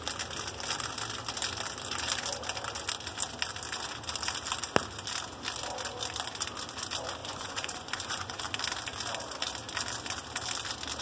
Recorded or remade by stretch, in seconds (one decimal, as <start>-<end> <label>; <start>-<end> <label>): 0.0-7.2 recorded; 7.2-8.4 remade; 8.4-11.0 recorded